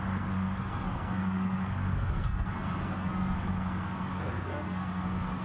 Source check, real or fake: fake